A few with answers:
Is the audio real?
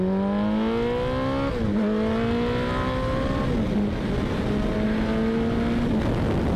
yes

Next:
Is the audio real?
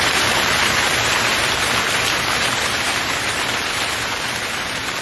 no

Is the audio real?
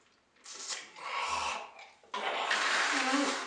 no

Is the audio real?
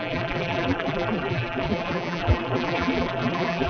no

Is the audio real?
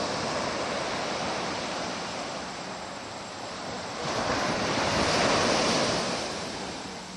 no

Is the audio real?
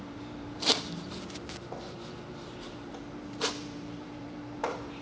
no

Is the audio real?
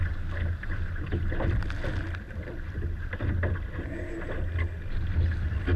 yes